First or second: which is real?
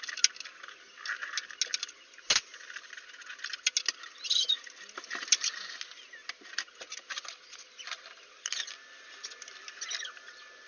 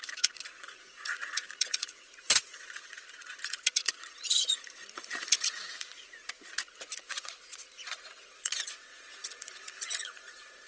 first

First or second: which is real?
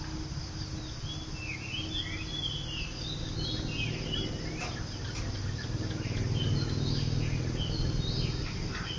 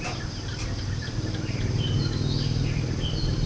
first